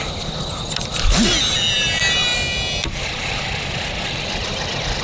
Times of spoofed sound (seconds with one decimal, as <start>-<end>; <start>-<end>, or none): none